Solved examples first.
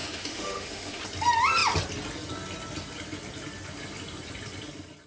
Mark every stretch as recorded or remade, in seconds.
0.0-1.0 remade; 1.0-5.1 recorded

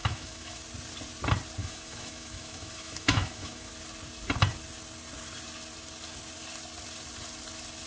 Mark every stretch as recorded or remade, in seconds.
0.0-0.6 remade; 0.6-1.6 recorded; 1.6-3.7 remade; 3.7-7.9 recorded

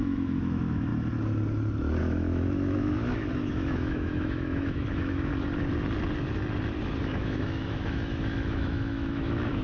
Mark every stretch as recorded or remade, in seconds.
0.0-0.9 remade; 0.9-2.0 recorded; 2.0-5.3 remade; 5.3-7.0 recorded; 7.0-9.6 remade

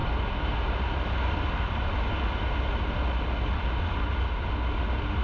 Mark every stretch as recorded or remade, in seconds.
0.0-5.2 recorded

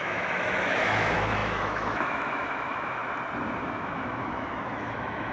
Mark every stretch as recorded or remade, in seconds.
0.0-3.0 remade; 3.0-3.6 recorded; 3.6-5.3 remade

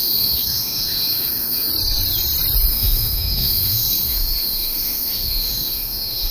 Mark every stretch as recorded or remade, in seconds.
0.0-1.7 remade; 1.7-2.7 recorded; 2.7-6.3 remade

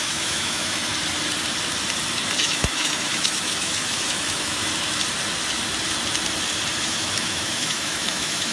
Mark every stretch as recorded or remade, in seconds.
0.0-0.9 remade; 0.9-2.4 recorded; 2.4-4.6 remade; 4.6-6.8 recorded; 6.8-8.5 remade

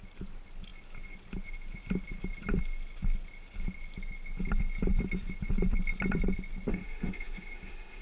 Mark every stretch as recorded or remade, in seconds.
0.0-6.7 recorded; 6.7-8.0 remade